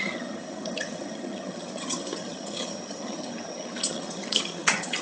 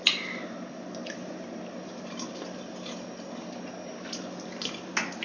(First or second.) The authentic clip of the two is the second